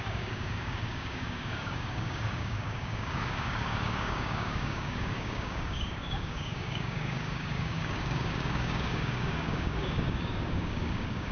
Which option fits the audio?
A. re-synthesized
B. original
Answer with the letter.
A